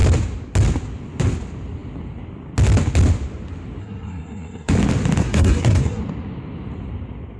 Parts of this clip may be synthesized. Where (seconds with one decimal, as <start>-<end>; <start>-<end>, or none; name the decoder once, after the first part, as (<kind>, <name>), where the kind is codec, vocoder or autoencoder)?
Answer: 3.8-4.7 (codec, SNAC); 5.2-6.0